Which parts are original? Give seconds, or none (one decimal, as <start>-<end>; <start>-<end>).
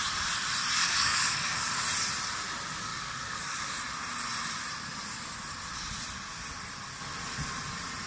0.0-0.8; 1.8-2.9; 3.7-8.1